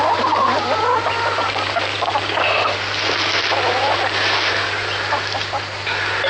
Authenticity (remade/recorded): recorded